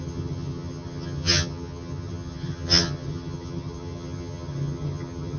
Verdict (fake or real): fake